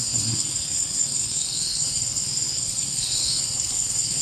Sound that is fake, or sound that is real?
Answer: fake